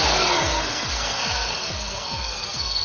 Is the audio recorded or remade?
remade